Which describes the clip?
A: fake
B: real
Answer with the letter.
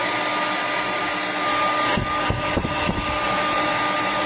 B